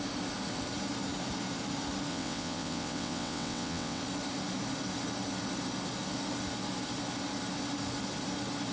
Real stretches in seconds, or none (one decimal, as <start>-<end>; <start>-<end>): 0.0-2.1; 4.0-8.7